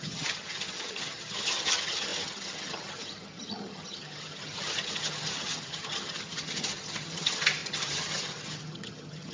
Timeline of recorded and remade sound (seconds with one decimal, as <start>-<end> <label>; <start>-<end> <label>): 0.0-9.3 remade

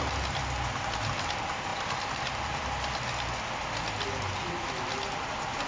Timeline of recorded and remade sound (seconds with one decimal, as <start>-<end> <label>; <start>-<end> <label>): 0.0-5.7 recorded